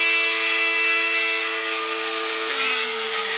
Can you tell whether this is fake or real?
fake